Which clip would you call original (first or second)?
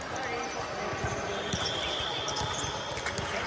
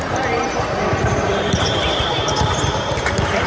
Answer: first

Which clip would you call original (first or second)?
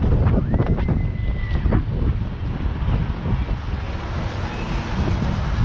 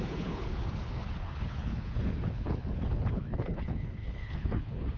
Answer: first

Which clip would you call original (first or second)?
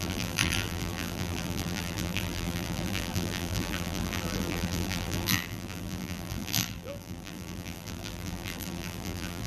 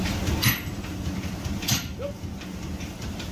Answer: second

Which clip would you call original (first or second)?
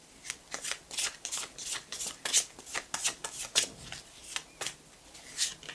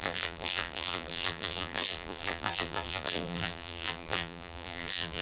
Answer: first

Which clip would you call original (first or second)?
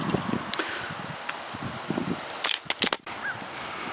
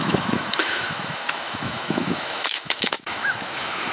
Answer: first